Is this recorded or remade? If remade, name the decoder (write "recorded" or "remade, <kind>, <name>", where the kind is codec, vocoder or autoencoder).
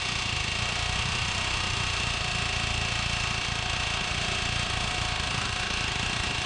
recorded